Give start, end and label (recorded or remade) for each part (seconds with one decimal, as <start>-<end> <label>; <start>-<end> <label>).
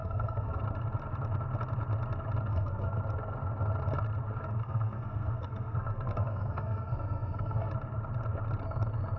0.0-0.6 remade; 0.6-2.5 recorded; 2.5-3.0 remade; 3.0-4.6 recorded; 4.6-7.7 remade; 7.7-9.2 recorded